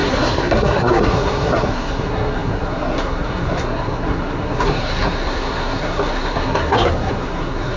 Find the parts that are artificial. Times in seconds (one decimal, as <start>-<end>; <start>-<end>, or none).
0.0-7.8